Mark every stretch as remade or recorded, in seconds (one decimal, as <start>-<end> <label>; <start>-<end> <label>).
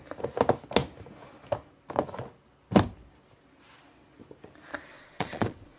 0.0-4.9 recorded; 4.9-5.8 remade